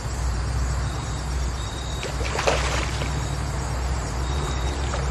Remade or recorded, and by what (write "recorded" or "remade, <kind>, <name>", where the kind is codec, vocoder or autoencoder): remade, vocoder, BigVGAN v2